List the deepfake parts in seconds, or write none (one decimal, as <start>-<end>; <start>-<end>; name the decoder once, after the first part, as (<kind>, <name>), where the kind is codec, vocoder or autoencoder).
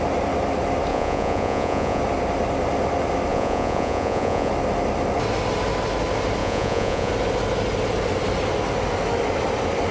0.9-2.0 (vocoder, Vocos); 3.3-4.5; 6.4-7.1